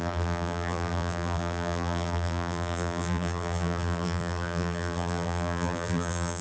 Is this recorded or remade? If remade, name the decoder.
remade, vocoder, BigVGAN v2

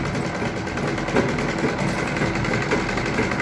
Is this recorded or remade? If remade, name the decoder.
recorded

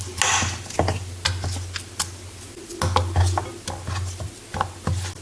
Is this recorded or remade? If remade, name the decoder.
recorded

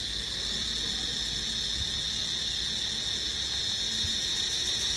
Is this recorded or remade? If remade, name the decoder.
recorded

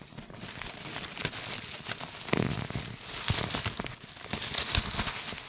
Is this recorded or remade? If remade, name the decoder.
recorded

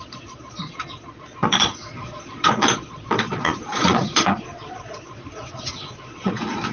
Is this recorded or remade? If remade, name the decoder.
remade, vocoder, Vocos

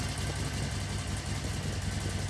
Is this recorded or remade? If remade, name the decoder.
recorded